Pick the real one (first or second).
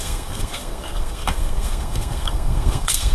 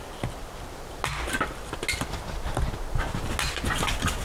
second